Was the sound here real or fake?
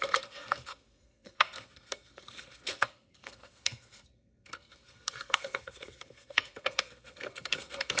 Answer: fake